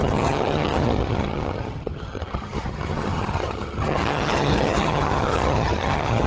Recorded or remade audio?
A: remade